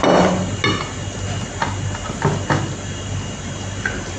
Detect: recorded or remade recorded